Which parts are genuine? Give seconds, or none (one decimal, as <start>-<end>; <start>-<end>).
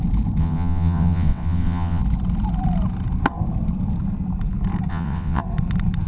0.0-0.4; 2.0-4.9; 5.4-6.1